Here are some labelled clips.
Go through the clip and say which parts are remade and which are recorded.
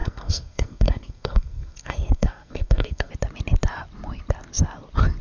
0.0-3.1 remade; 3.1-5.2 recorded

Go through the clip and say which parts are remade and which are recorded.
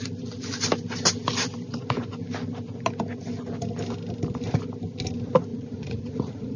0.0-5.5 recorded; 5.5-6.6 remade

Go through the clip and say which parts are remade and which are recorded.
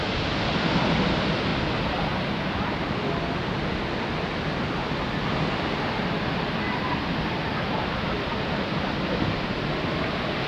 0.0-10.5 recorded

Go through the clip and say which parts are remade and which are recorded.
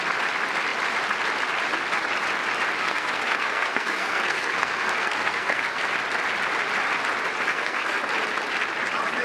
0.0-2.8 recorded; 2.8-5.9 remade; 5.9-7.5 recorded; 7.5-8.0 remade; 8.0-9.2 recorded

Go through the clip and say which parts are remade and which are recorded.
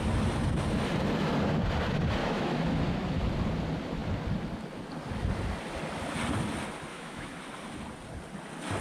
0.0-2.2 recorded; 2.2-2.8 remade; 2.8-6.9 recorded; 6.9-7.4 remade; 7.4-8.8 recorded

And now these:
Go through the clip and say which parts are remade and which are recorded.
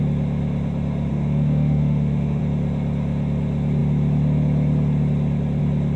0.0-1.1 recorded; 1.1-2.4 remade; 2.4-6.0 recorded